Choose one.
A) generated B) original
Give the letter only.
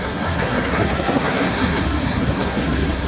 A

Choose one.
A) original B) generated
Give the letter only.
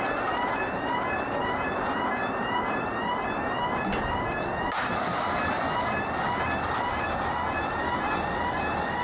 A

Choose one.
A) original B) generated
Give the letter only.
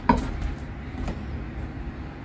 A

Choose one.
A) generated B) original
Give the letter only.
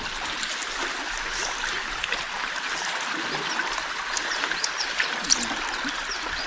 B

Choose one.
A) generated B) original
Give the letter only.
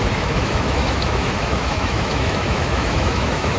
A